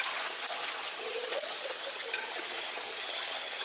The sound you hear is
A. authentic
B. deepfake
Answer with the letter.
B